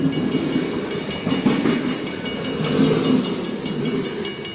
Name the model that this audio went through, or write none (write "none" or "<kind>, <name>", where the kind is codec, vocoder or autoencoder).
none